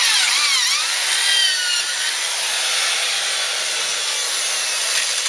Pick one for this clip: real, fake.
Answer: real